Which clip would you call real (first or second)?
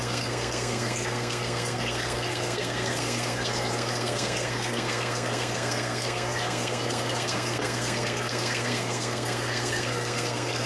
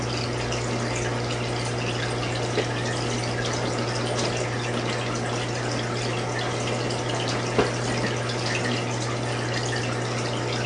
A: second